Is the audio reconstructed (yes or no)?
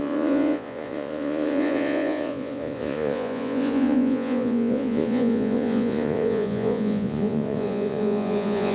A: yes